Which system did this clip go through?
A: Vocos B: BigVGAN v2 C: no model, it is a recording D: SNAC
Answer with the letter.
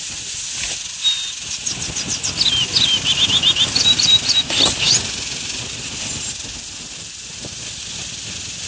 C